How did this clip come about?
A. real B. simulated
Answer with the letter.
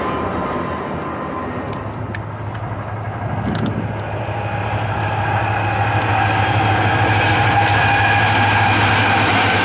A